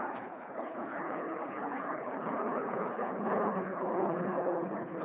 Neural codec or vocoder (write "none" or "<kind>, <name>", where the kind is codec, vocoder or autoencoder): codec, HILCodec